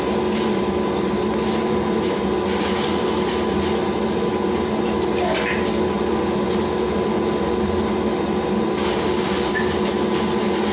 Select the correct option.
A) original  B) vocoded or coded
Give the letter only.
A